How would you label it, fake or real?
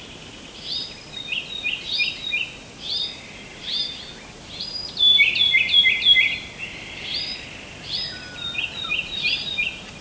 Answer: real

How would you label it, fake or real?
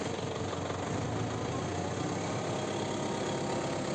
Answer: real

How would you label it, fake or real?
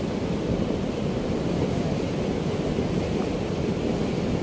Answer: real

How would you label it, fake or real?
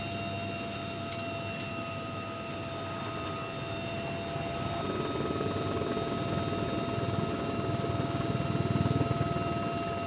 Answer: real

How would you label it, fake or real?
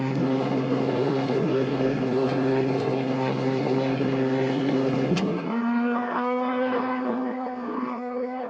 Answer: fake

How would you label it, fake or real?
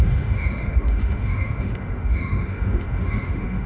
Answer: fake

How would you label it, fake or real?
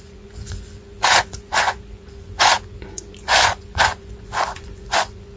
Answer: fake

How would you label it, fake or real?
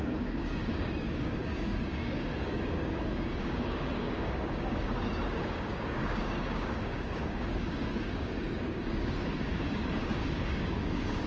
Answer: fake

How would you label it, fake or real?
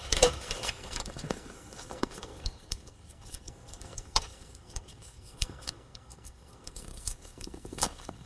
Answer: fake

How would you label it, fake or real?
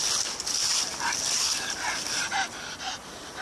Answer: real